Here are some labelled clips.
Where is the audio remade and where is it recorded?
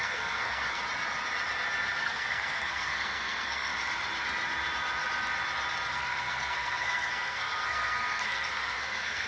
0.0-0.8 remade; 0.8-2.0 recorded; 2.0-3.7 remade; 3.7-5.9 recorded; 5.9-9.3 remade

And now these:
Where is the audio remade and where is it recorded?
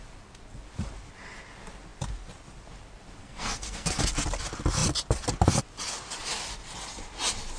0.0-3.2 recorded; 3.2-4.0 remade; 4.0-7.6 recorded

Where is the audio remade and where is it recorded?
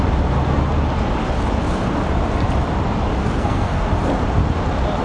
0.0-3.2 recorded; 3.2-3.9 remade; 3.9-5.0 recorded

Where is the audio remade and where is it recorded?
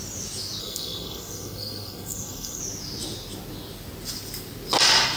0.0-0.6 recorded; 0.6-2.6 remade; 2.6-5.2 recorded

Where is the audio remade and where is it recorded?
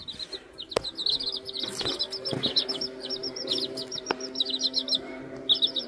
0.0-5.9 recorded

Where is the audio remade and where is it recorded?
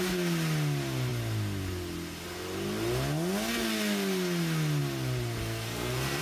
0.0-5.4 recorded; 5.4-6.2 remade